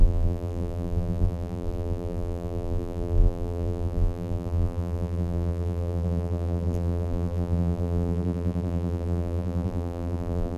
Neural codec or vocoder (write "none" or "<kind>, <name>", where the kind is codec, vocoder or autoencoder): vocoder, BigVGAN v2